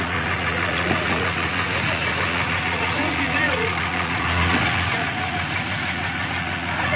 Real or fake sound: fake